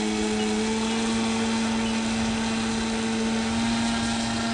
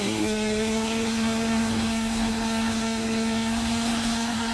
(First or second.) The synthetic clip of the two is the second